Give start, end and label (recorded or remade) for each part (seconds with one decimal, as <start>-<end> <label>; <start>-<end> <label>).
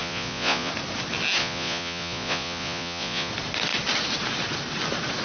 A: 0.0-0.7 remade; 0.7-1.4 recorded; 1.4-3.3 remade; 3.3-5.2 recorded